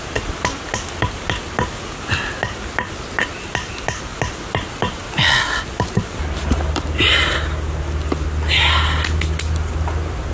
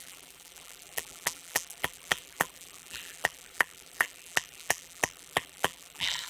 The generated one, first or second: second